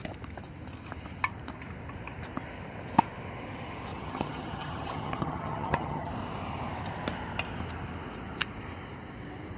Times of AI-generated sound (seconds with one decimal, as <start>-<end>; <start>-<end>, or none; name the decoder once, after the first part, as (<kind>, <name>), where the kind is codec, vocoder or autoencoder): 3.9-6.1 (vocoder, HiFi-GAN)